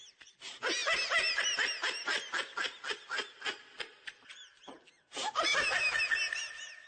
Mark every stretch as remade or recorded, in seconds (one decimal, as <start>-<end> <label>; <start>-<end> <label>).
0.0-5.5 recorded; 5.5-6.0 remade; 6.0-6.9 recorded